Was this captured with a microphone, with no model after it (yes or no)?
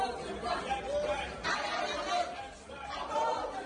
no